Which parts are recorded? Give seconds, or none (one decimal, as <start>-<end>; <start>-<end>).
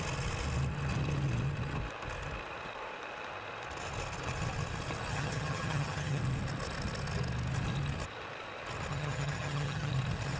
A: 0.0-5.1; 6.2-8.9; 9.9-10.4